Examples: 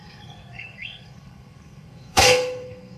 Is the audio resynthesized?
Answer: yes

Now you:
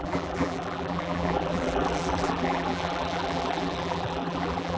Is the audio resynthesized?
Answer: yes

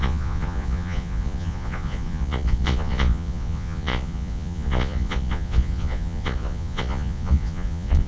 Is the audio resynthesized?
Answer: yes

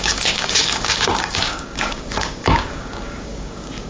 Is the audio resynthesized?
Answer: yes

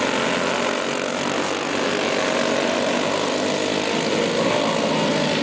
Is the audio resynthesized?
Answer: no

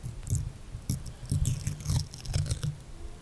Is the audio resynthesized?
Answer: no